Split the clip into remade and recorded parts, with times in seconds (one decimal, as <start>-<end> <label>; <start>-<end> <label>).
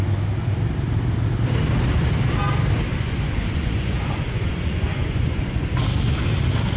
0.0-2.9 recorded; 2.9-5.8 remade; 5.8-6.8 recorded